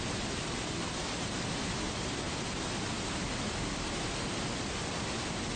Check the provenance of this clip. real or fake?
real